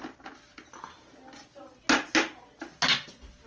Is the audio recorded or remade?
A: recorded